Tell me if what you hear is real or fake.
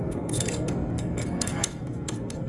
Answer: fake